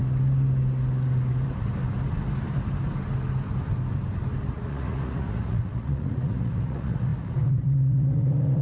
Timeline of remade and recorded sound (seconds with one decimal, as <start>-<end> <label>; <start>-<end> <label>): 0.0-4.5 recorded; 4.5-8.6 remade